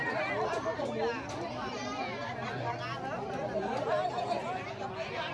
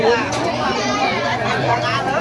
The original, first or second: first